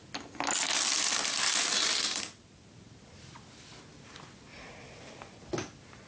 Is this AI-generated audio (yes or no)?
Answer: no